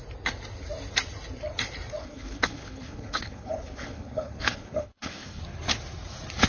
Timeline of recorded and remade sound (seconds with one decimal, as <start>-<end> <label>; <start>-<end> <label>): 0.0-2.0 recorded; 2.0-5.4 remade; 5.4-6.5 recorded